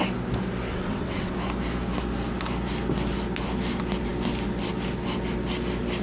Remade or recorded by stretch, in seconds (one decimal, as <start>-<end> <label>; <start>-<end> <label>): 0.0-0.7 recorded; 0.7-1.3 remade; 1.3-6.0 recorded